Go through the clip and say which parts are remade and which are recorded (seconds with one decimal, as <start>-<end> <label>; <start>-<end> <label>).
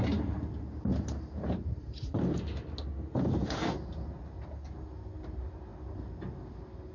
0.0-0.9 recorded; 0.9-2.4 remade; 2.4-6.9 recorded